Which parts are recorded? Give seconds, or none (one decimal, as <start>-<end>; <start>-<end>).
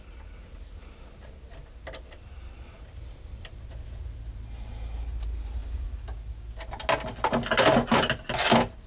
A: 0.0-8.9